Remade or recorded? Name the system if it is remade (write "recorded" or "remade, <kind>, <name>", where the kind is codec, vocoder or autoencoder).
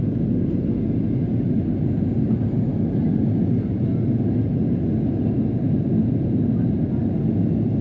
recorded